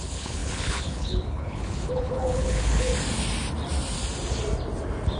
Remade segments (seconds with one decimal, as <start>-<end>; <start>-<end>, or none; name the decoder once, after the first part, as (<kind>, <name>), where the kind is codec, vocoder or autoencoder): 0.0-2.9 (codec, HILCodec)

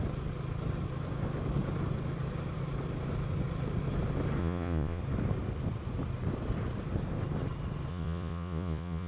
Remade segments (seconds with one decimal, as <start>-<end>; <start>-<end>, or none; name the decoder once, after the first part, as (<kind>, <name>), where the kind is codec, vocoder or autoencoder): 4.4-5.0 (vocoder, Vocos); 7.9-9.1

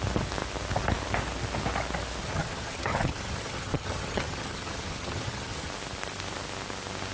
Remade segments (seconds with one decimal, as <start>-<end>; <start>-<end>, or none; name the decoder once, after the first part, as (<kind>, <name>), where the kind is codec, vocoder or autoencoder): 2.2-5.7 (vocoder, HiFi-GAN)

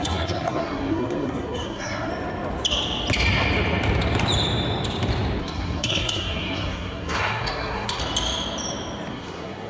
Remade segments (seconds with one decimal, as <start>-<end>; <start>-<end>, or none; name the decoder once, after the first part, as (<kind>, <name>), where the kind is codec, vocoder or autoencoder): 0.0-2.1 (codec, SNAC); 5.4-8.0; 9.1-9.7

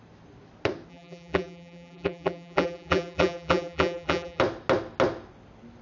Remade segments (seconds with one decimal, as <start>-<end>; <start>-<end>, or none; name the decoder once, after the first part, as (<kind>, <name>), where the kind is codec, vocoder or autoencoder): 0.9-4.4 (vocoder, BigVGAN v2)